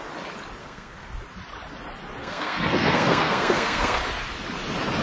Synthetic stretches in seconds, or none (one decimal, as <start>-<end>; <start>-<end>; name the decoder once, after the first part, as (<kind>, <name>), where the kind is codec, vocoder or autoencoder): 0.6-1.1 (codec, SNAC); 2.2-4.0